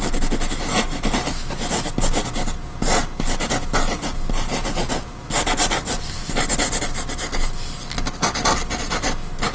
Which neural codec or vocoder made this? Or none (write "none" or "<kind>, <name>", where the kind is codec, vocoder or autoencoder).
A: none